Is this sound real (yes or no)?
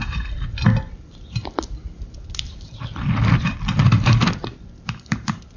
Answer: no